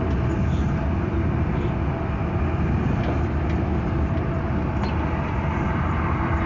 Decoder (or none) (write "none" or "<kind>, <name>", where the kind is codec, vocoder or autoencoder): none